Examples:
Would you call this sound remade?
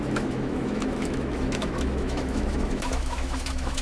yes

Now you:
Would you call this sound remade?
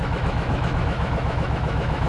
yes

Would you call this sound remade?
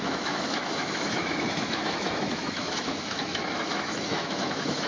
yes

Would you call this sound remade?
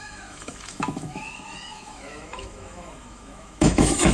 yes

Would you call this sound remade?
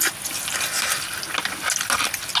no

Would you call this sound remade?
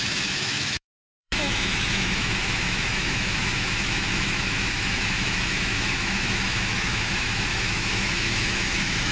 yes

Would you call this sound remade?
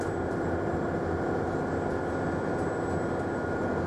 no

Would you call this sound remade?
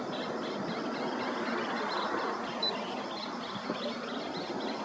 no